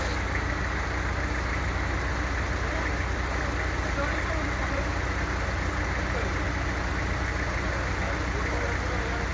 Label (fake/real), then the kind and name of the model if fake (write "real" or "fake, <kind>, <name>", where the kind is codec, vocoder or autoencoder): real